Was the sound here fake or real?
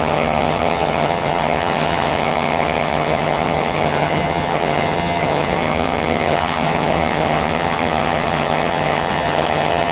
fake